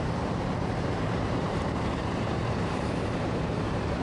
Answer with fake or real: fake